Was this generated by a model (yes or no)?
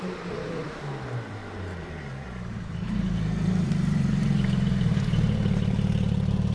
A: yes